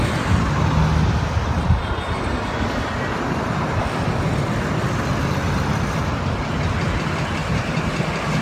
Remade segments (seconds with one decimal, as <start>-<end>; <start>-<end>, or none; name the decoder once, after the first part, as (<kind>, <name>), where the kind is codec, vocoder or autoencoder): 7.4-8.4 (vocoder, BigVGAN v2)